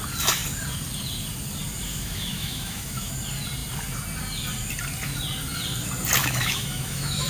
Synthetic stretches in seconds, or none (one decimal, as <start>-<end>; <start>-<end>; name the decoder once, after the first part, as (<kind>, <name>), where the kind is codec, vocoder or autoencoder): 1.9-3.1 (autoencoder, DAC-VAE); 6.2-7.3